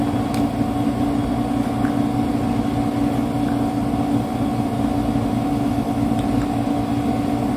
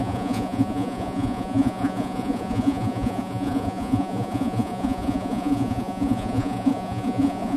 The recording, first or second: first